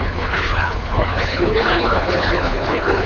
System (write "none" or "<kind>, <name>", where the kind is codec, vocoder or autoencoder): codec, HILCodec